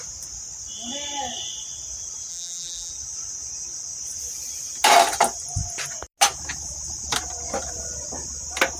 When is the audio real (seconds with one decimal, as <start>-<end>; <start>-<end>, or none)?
0.0-2.3; 2.9-8.8